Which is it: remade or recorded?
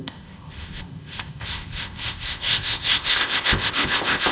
remade